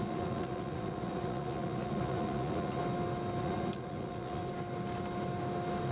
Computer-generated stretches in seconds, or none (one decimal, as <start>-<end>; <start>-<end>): 0.0-2.8; 3.4-4.4